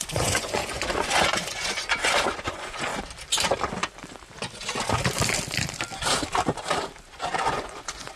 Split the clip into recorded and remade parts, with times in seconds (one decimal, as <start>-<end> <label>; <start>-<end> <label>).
0.0-2.9 remade; 2.9-7.0 recorded; 7.0-8.2 remade